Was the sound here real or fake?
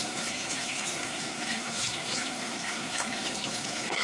fake